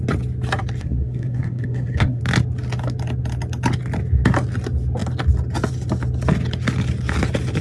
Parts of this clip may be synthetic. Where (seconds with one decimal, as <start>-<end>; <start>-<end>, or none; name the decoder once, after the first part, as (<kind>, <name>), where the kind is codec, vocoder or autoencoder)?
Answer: 0.8-2.2 (codec, SNAC)